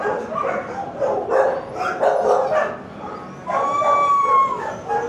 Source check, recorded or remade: recorded